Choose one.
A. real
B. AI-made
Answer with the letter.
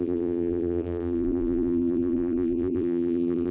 B